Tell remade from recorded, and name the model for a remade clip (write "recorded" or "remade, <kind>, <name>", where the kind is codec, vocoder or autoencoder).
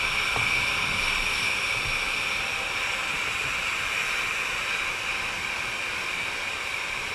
remade, vocoder, BigVGAN v2